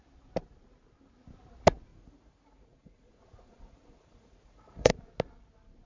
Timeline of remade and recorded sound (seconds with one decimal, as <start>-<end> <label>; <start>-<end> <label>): 0.0-1.9 recorded; 1.9-4.9 remade; 4.9-5.9 recorded

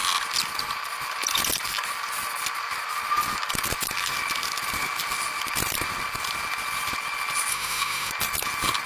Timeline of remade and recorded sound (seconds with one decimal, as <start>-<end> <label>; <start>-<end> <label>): 0.0-7.5 recorded; 7.5-8.1 remade; 8.1-8.9 recorded

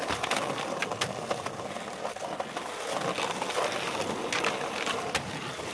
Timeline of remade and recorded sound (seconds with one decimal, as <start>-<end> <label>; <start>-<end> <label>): 0.0-5.7 recorded

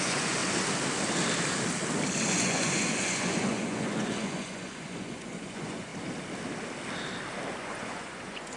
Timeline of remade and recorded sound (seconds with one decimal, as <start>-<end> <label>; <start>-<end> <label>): 0.0-0.4 remade; 0.4-2.3 recorded; 2.3-5.9 remade; 5.9-7.6 recorded; 7.6-8.6 remade

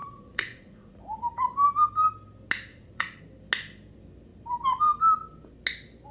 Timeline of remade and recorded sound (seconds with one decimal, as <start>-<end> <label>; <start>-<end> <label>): 0.0-1.0 remade; 1.0-2.7 recorded; 2.7-3.2 remade; 3.2-6.1 recorded

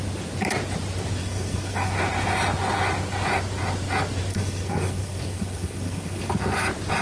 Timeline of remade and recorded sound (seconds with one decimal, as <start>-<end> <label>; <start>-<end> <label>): 0.0-1.2 recorded; 1.2-1.9 remade; 1.9-4.3 recorded; 4.3-6.3 remade; 6.3-7.0 recorded